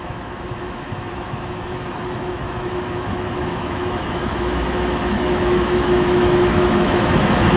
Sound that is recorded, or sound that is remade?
remade